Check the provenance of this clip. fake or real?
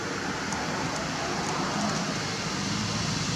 real